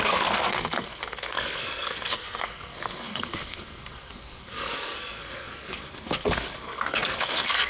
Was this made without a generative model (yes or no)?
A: no